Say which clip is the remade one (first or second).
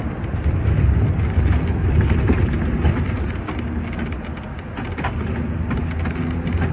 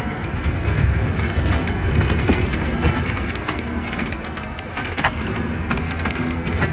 second